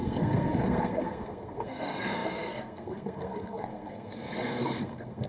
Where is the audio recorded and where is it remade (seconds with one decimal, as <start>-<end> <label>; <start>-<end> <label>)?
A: 0.0-5.3 remade